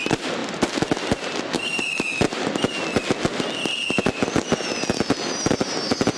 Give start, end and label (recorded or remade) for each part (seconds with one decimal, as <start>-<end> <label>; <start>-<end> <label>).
0.0-6.2 recorded